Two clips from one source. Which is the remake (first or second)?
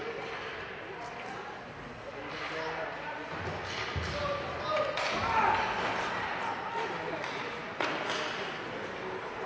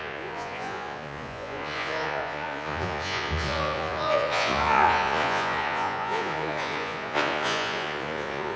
second